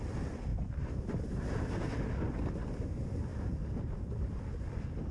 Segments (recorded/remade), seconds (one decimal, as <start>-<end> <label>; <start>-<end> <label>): 0.0-0.5 recorded; 0.5-1.9 remade; 1.9-3.3 recorded; 3.3-4.4 remade; 4.4-5.1 recorded